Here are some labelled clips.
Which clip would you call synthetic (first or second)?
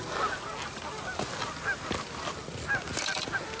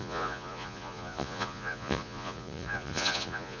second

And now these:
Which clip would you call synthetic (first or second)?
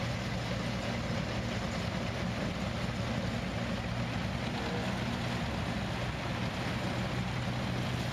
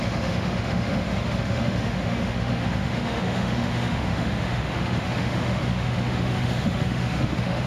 second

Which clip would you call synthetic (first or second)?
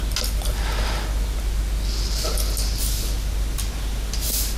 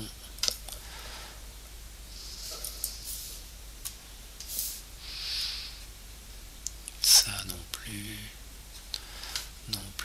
second